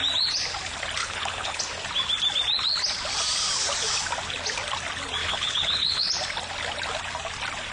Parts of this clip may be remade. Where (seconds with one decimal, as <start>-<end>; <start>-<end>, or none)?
1.0-1.6; 5.2-6.1